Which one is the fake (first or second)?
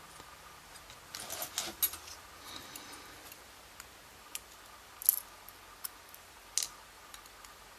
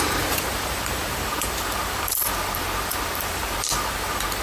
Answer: second